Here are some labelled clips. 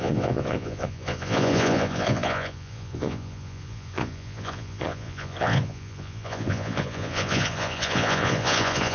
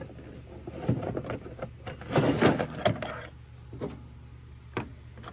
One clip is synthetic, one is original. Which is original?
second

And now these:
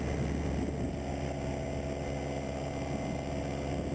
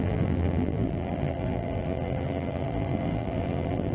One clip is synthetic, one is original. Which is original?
first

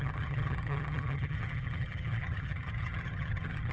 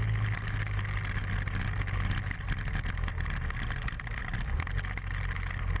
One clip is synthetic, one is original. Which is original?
second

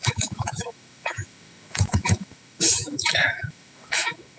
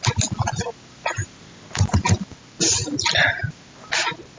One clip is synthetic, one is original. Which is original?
second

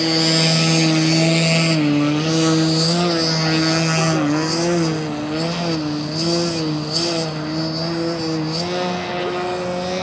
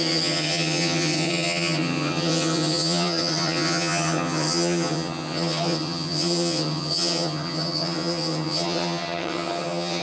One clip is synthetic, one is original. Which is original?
first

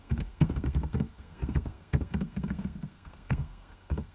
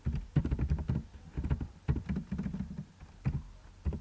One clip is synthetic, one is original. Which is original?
second